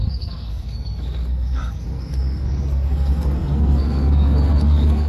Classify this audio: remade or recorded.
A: remade